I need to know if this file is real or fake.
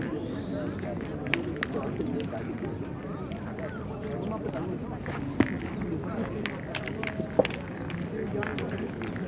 real